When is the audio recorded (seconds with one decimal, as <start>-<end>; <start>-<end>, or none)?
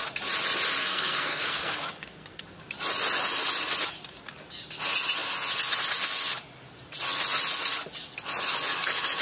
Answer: 0.0-0.8; 2.4-9.2